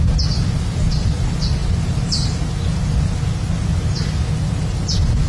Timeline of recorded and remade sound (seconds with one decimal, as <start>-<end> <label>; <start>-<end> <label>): 0.0-1.6 recorded; 1.6-2.8 remade; 2.8-5.3 recorded